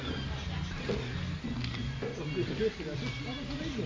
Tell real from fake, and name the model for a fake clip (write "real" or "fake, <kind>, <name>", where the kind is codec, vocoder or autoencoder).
real